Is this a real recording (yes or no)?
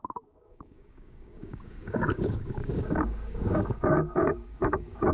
no